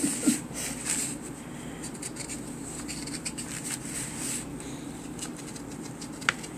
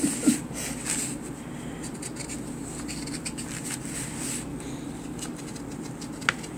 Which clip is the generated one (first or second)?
first